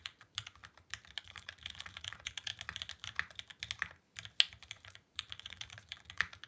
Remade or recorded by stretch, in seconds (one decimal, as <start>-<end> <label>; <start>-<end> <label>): 0.0-0.6 remade; 0.6-1.2 recorded; 1.2-2.5 remade; 2.5-4.7 recorded; 4.7-6.5 remade